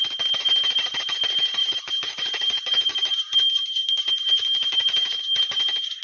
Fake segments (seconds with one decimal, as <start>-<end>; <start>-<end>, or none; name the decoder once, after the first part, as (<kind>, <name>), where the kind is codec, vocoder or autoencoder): 1.6-5.2 (vocoder, BigVGAN v2)